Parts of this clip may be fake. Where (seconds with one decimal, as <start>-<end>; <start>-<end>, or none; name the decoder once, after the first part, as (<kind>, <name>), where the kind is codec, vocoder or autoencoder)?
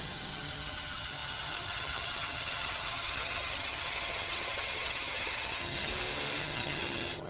0.0-5.9 (vocoder, HiFi-GAN); 6.4-7.3